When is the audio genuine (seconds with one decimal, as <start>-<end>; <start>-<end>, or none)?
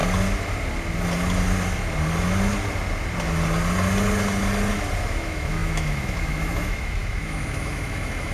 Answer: 0.0-5.0